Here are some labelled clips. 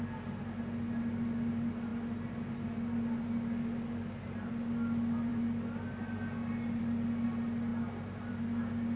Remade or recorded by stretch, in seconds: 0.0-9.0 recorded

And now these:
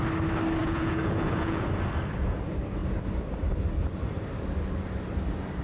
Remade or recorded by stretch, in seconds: 0.0-0.6 recorded; 0.6-1.7 remade; 1.7-5.6 recorded

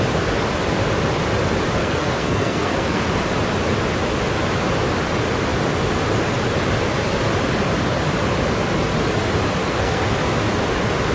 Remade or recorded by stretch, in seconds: 0.0-1.8 recorded; 1.8-3.1 remade; 3.1-9.6 recorded; 9.6-10.1 remade; 10.1-11.1 recorded

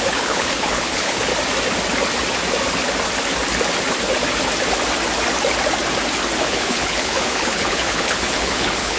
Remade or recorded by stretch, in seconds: 0.0-1.3 remade; 1.3-6.4 recorded; 6.4-9.0 remade

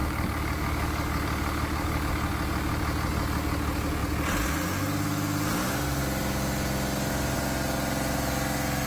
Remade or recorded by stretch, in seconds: 0.0-2.1 remade; 2.1-8.9 recorded

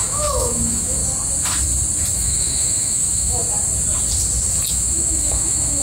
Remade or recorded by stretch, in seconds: 0.0-1.0 remade; 1.0-2.1 recorded; 2.1-3.4 remade; 3.4-4.7 recorded; 4.7-5.8 remade

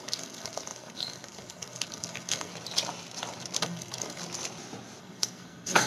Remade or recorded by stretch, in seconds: 0.0-2.5 remade; 2.5-3.6 recorded; 3.6-4.2 remade; 4.2-5.0 recorded; 5.0-5.9 remade